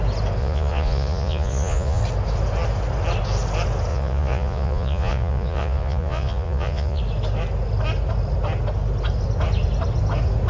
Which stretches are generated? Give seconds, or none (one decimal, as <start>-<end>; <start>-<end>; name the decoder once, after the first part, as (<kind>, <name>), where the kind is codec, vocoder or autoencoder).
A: 0.4-2.0 (vocoder, Vocos); 3.9-7.0